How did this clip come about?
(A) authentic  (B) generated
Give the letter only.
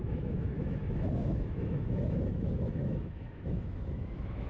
B